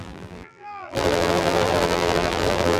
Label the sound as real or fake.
fake